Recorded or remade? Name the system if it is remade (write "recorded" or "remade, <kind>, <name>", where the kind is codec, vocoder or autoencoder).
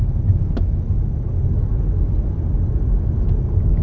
recorded